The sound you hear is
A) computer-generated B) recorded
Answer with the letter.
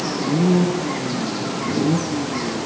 B